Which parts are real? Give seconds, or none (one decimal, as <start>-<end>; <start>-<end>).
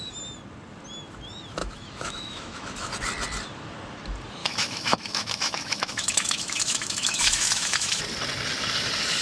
0.0-1.6; 2.9-4.4; 8.0-9.2